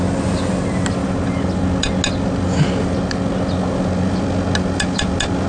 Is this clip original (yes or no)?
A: yes